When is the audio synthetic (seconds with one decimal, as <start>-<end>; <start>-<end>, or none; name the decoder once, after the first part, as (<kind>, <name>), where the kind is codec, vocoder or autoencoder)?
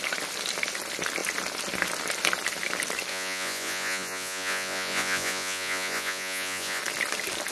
3.1-6.8 (vocoder, Vocos)